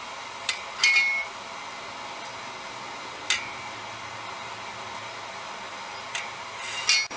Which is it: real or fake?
real